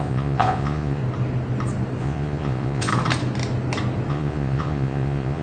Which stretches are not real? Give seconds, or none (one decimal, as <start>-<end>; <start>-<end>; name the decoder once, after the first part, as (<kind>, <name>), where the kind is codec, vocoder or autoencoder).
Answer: 0.0-1.0 (vocoder, Vocos); 2.0-2.9; 4.1-5.4